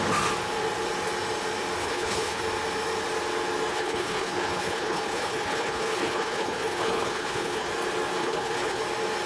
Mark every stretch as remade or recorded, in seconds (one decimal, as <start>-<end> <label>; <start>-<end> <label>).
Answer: 0.0-1.8 recorded; 1.8-2.4 remade; 2.4-3.7 recorded; 3.7-7.7 remade; 7.7-8.2 recorded; 8.2-8.8 remade; 8.8-9.3 recorded